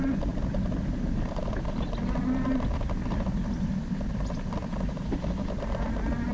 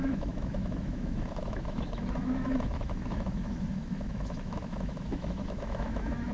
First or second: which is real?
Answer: first